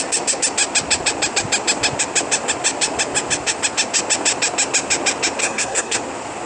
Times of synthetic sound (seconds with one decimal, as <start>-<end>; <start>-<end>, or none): 5.4-6.0